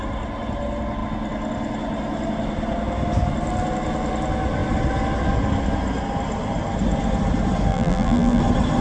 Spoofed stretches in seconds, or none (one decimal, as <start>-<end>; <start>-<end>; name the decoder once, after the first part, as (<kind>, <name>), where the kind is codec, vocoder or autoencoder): 7.7-8.4 (vocoder, BigVGAN v2)